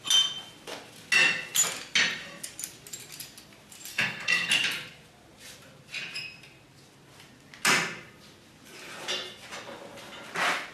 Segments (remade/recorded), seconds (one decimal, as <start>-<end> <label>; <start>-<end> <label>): 0.0-3.9 recorded; 3.9-4.5 remade; 4.5-10.7 recorded